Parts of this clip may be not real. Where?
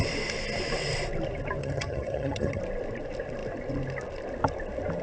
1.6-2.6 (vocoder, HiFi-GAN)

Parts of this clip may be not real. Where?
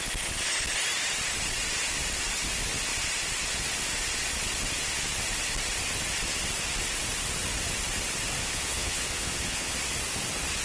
8.4-9.7 (vocoder, Vocos)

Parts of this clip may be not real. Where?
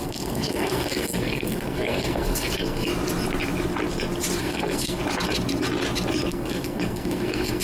0.0-2.9 (codec, SNAC); 4.4-5.0; 6.3-7.6